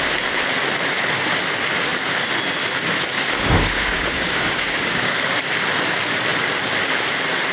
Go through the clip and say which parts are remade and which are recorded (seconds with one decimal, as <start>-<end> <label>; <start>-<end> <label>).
0.0-3.1 recorded; 3.1-5.4 remade; 5.4-7.5 recorded